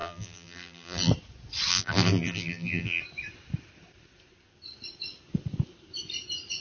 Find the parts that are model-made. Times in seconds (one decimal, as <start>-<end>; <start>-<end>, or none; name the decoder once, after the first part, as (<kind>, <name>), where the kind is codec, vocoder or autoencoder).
0.0-1.1 (vocoder, BigVGAN v2); 1.7-3.0